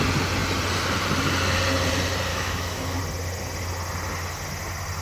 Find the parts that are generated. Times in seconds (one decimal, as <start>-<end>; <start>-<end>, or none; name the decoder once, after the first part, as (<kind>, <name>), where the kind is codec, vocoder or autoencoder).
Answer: 2.3-3.0 (autoencoder, DAC-VAE)